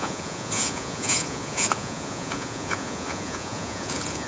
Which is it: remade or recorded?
remade